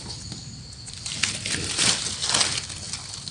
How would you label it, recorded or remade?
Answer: recorded